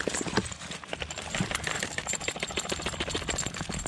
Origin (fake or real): real